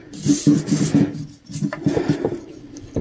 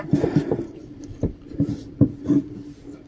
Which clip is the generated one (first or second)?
second